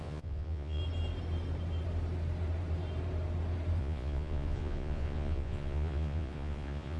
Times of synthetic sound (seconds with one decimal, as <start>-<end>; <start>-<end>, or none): 0.0-0.8; 3.8-7.0